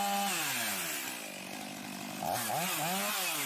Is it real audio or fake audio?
real